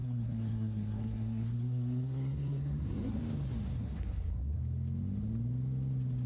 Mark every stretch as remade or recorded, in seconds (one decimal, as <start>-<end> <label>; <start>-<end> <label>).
0.0-3.2 remade; 3.2-3.8 recorded; 3.8-4.6 remade; 4.6-6.3 recorded